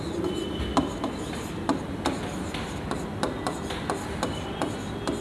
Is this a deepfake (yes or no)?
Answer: no